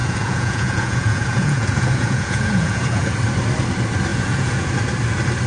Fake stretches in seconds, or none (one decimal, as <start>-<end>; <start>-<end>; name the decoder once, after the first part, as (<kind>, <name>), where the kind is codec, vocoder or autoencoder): 0.0-3.2 (vocoder, Vocos); 4.1-4.7